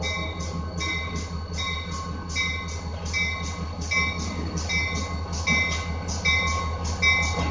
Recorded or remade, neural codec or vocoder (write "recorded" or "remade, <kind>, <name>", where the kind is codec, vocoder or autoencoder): recorded